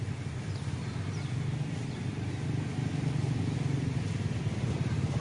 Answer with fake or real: real